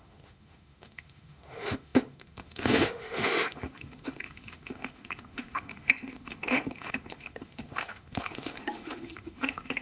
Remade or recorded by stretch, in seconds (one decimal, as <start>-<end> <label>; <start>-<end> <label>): 0.0-9.8 remade